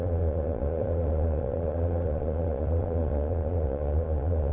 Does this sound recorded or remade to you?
remade